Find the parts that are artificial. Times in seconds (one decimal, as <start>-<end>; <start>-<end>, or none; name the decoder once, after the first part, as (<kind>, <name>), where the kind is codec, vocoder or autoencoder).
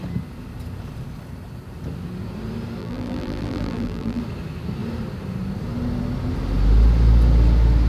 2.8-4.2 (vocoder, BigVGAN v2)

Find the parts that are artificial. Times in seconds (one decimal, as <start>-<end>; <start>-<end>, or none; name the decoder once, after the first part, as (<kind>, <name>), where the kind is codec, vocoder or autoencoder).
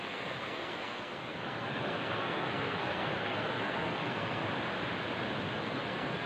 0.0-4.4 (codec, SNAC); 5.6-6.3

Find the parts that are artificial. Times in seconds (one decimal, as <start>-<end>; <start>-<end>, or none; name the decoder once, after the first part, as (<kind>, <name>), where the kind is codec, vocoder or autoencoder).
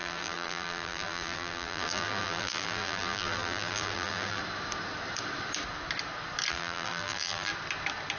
0.0-4.4 (vocoder, BigVGAN v2); 6.5-7.5